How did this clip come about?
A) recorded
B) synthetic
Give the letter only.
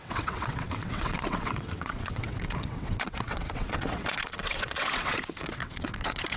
B